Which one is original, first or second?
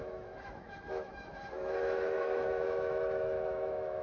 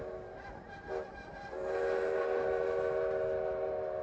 second